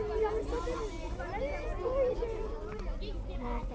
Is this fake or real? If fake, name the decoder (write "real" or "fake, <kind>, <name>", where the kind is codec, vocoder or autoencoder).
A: real